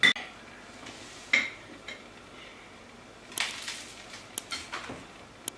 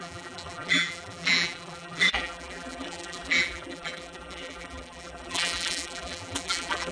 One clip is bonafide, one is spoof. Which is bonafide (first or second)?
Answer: first